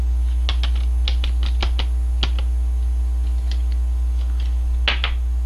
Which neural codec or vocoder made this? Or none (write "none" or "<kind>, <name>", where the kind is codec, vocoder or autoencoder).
none